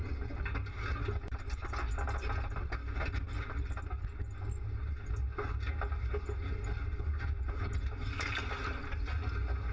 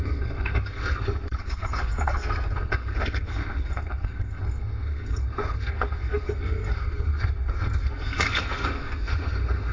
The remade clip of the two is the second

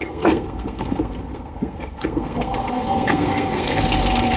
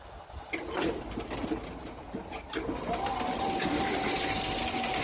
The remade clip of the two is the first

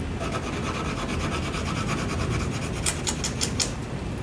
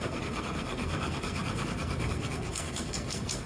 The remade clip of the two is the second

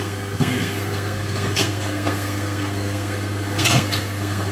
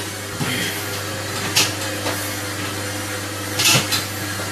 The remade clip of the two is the first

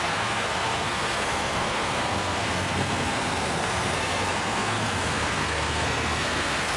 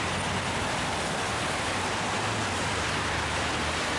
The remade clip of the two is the first